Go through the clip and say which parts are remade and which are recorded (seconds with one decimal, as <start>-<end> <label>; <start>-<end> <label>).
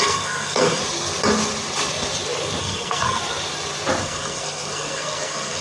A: 0.0-0.8 remade; 0.8-2.6 recorded; 2.6-3.2 remade; 3.2-4.0 recorded; 4.0-5.6 remade